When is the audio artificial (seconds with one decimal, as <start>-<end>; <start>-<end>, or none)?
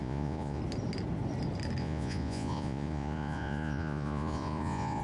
0.0-0.6; 1.8-5.0